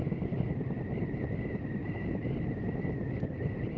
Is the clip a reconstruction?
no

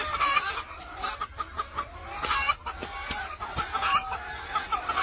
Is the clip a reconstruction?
no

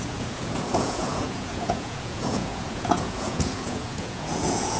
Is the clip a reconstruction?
yes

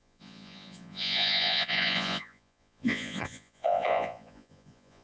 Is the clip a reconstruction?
yes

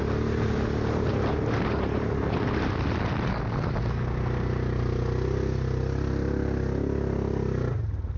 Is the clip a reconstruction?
no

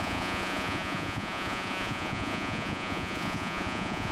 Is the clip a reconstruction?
yes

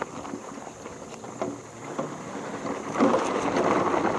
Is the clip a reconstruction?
no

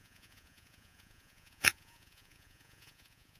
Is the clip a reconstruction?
yes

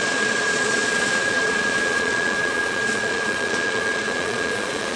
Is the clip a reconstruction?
yes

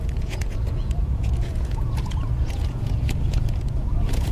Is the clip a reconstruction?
yes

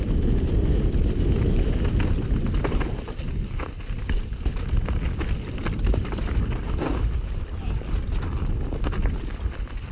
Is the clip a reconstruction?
no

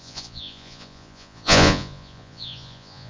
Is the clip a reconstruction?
yes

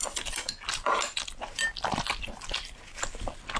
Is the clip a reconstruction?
no